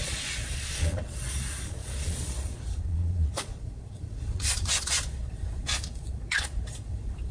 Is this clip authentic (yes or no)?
no